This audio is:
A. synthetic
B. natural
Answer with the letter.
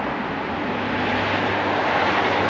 B